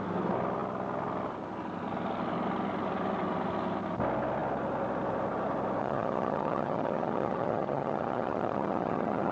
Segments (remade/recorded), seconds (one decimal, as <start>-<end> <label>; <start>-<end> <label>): 0.0-5.8 recorded; 5.8-9.3 remade